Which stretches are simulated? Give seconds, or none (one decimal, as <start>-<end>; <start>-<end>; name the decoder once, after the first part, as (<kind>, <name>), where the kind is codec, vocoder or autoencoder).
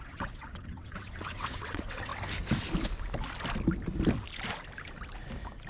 0.0-2.1 (vocoder, WaveNeXt)